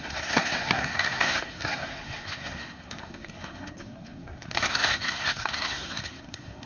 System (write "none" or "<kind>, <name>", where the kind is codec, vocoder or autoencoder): codec, SNAC